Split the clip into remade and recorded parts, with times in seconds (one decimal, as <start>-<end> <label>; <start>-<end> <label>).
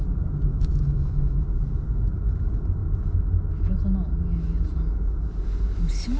0.0-0.5 recorded; 0.5-1.4 remade; 1.4-6.2 recorded